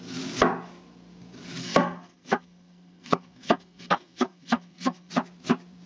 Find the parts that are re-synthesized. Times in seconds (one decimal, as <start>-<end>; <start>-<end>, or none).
1.6-5.1